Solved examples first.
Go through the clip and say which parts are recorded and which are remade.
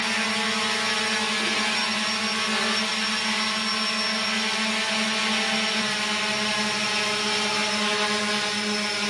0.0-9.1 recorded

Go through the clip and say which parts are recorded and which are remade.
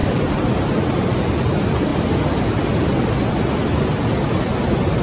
0.0-0.6 remade; 0.6-5.0 recorded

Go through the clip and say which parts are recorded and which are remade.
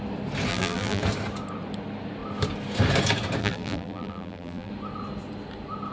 0.0-0.5 recorded; 0.5-1.0 remade; 1.0-3.4 recorded; 3.4-4.7 remade; 4.7-5.9 recorded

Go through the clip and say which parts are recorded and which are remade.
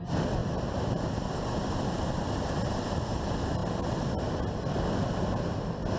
0.0-0.4 recorded; 0.4-1.1 remade; 1.1-6.0 recorded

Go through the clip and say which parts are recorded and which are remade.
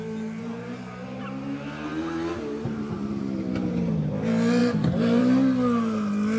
0.0-0.4 recorded; 0.4-1.2 remade; 1.2-2.5 recorded; 2.5-3.2 remade; 3.2-4.6 recorded; 4.6-5.2 remade; 5.2-6.4 recorded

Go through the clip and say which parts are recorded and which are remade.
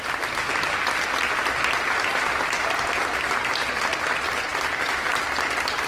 0.0-2.1 recorded; 2.1-3.4 remade; 3.4-4.5 recorded; 4.5-5.1 remade; 5.1-5.9 recorded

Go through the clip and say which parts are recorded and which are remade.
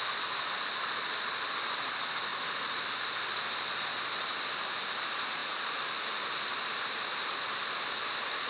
0.0-8.5 recorded